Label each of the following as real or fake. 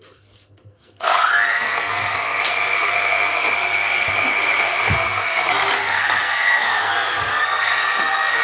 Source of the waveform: fake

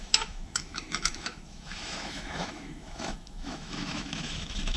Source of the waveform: fake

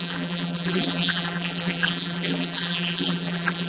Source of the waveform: fake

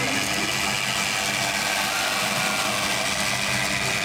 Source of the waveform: real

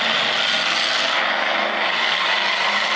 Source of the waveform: real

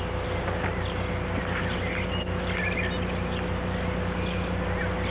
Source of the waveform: real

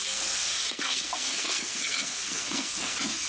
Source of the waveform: fake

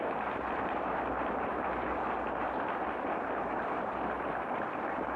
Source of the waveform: fake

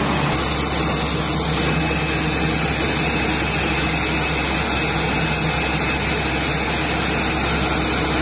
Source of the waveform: real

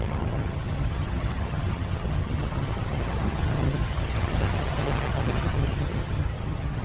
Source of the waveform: fake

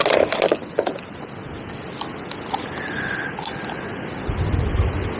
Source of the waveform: real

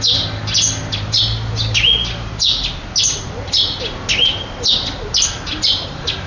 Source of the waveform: real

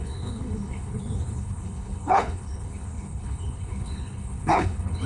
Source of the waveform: fake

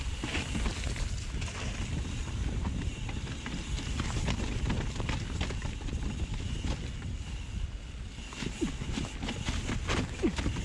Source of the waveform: real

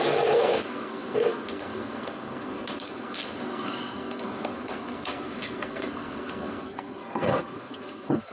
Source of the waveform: fake